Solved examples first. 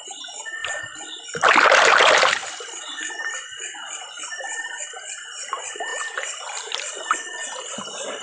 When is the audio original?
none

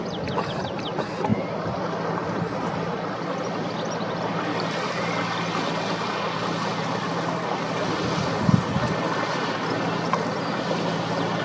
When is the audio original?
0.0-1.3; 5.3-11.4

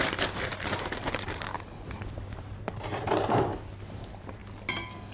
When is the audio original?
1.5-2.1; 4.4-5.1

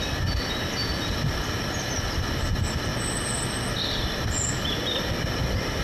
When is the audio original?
0.0-0.8; 2.4-5.8

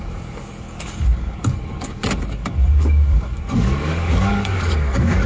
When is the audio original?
none

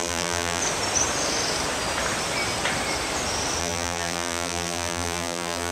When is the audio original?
0.6-3.6

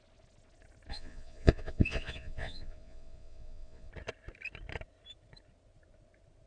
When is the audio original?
0.0-0.9; 3.9-6.5

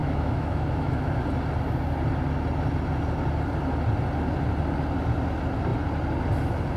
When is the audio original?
1.2-6.8